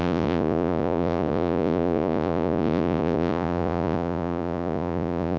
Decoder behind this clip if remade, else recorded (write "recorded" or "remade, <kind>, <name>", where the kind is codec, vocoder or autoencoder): remade, vocoder, Vocos